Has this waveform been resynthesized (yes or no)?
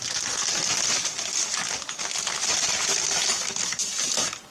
no